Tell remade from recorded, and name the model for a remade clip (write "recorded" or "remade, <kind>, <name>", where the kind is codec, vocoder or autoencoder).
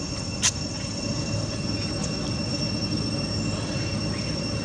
recorded